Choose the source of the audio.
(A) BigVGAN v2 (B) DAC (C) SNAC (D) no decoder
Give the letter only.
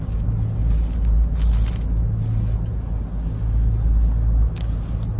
D